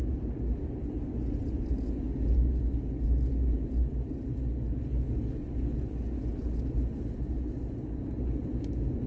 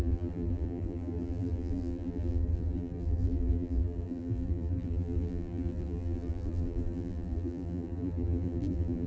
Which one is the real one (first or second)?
first